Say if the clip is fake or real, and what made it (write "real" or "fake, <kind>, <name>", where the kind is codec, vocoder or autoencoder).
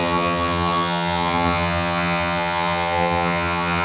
fake, vocoder, HiFi-GAN